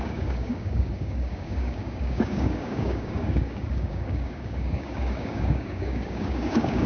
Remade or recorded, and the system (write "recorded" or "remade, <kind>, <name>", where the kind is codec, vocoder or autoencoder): remade, codec, DAC